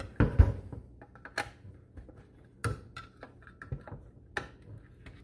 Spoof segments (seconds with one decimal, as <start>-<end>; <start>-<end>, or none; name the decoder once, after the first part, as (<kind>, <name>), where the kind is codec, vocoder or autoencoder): none